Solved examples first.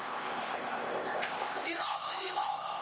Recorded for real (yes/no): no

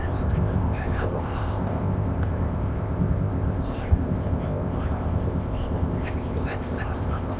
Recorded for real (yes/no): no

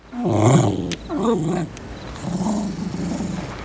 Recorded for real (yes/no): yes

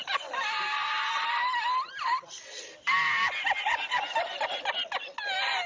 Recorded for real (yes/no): yes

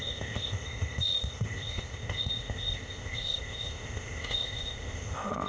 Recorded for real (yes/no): no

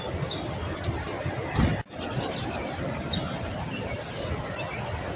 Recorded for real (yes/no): yes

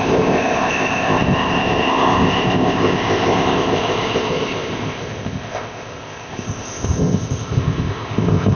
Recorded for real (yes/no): no